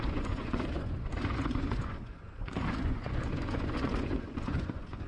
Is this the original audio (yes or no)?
no